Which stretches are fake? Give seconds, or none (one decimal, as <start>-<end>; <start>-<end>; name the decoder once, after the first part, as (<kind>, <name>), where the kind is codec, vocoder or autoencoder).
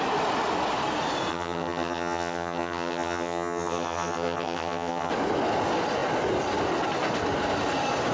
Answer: 1.3-5.1 (vocoder, HiFi-GAN)